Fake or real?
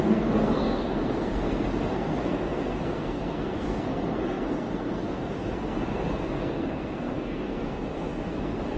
fake